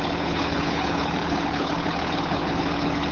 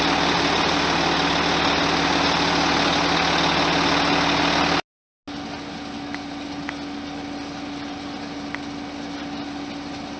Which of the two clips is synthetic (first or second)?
first